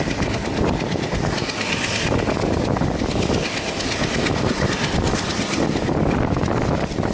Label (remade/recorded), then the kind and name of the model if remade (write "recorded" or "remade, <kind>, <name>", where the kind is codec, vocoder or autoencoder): recorded